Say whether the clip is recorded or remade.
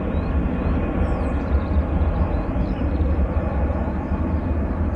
recorded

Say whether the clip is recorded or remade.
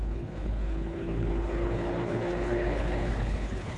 remade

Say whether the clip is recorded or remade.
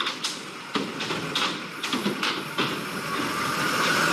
remade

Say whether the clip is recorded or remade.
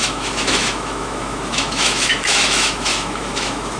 remade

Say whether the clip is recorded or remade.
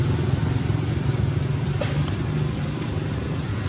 recorded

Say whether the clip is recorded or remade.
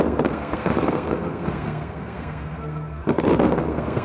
remade